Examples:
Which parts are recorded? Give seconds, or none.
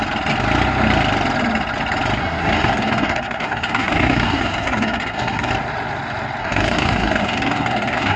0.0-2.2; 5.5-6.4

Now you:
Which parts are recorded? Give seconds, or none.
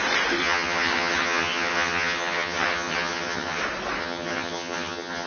0.0-0.4; 3.6-4.0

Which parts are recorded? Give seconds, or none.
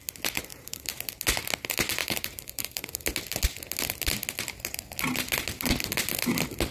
0.0-0.5; 1.1-2.0; 2.9-6.7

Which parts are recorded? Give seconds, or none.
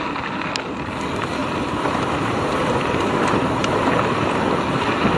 0.0-1.4; 4.5-5.2